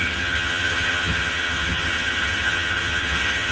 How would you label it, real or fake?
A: fake